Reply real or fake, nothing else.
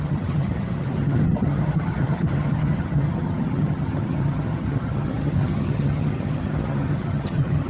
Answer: fake